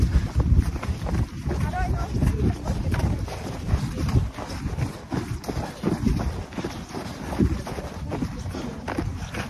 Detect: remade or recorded recorded